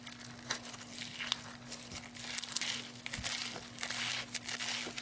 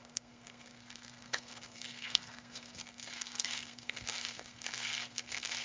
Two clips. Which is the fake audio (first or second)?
second